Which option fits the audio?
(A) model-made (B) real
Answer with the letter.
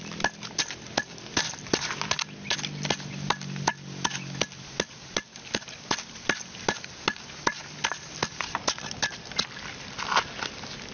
B